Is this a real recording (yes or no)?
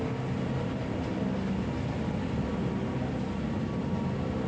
yes